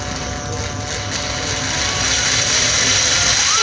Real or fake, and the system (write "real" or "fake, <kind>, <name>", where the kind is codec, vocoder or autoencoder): real